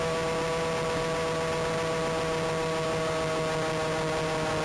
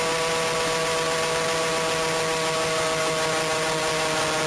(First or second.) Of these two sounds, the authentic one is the first